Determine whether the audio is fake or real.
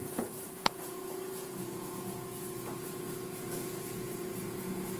fake